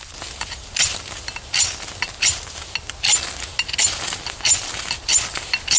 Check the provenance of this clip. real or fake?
real